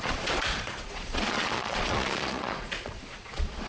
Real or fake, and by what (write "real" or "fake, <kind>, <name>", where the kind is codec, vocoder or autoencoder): fake, vocoder, Vocos